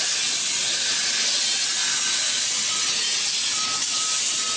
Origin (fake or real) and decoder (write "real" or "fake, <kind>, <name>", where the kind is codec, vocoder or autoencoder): real